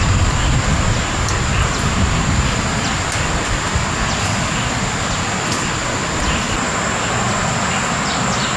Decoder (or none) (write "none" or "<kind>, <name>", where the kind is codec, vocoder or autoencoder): none